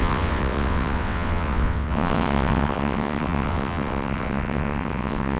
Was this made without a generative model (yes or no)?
no